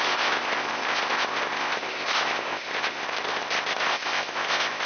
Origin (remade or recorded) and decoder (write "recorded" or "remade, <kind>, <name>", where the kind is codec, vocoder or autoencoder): remade, codec, ZipCodec